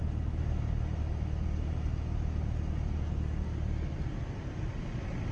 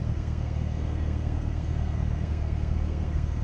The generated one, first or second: second